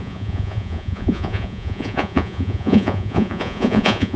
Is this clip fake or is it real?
fake